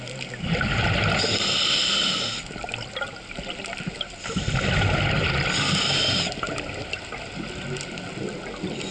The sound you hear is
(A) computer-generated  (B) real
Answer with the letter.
B